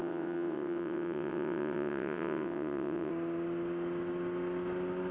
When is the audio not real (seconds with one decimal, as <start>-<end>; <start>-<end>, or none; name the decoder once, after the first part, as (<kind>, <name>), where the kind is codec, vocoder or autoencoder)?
0.0-3.1 (vocoder, WaveNeXt)

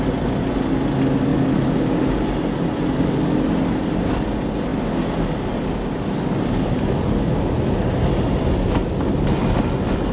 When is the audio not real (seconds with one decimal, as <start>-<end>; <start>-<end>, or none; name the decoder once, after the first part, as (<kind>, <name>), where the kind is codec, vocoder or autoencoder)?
none

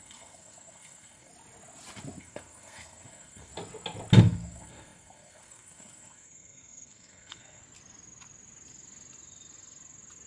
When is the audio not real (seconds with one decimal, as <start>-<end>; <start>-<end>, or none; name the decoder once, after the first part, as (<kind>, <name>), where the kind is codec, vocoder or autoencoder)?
0.0-1.3 (codec, SNAC); 2.2-3.5; 4.2-7.6